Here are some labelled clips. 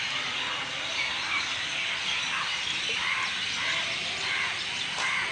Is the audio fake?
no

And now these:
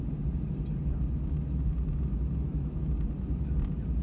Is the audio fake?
no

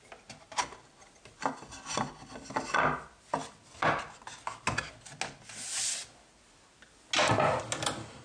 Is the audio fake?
no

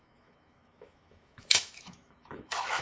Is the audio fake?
yes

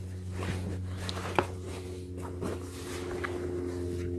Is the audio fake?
no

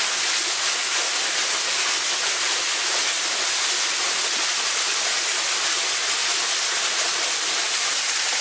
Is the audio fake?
no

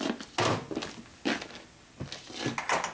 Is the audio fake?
no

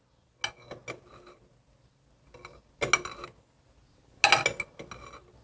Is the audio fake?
no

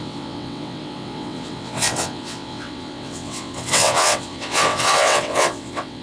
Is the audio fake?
yes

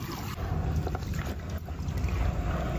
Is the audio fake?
no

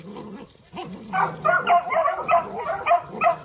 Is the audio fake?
yes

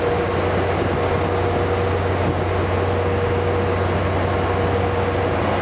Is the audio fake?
no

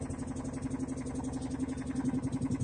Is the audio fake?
no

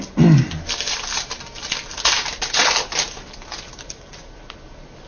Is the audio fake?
no